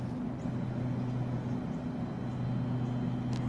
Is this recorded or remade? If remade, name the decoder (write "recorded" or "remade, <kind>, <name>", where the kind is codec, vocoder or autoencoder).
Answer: recorded